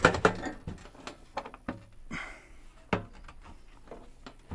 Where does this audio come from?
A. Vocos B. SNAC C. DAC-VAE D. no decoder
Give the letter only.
D